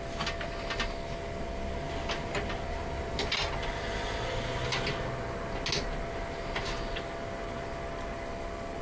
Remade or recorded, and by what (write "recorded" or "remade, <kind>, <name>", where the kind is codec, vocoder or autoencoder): recorded